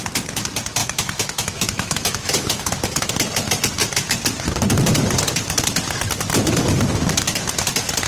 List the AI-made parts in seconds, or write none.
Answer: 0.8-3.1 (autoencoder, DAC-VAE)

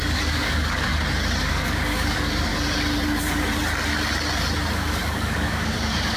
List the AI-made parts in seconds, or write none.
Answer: 0.0-0.9 (codec, DAC); 1.4-2.5; 4.7-6.2

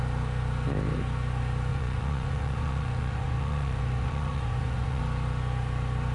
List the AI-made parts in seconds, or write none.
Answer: 1.7-5.0 (vocoder, Vocos)

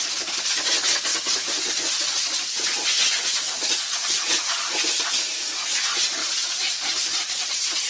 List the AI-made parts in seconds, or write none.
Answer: 1.1-5.8 (vocoder, BigVGAN v2); 6.2-7.3